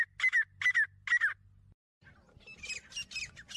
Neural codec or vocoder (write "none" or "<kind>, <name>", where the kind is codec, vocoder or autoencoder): none